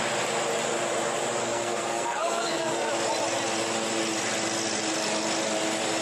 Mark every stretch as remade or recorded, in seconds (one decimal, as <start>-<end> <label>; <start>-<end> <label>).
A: 0.0-1.4 recorded; 1.4-2.9 remade; 2.9-6.0 recorded